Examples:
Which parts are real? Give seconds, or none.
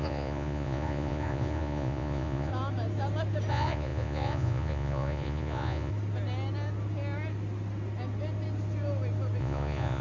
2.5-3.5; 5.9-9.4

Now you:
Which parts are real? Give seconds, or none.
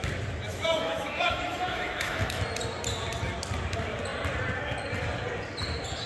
0.0-0.5; 2.4-6.1